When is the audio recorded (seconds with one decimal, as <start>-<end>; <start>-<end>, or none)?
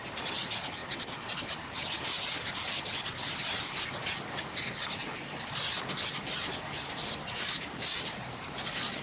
0.0-9.0